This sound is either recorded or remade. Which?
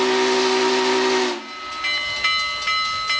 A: recorded